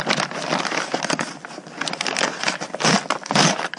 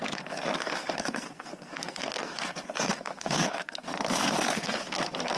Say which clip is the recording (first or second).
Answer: first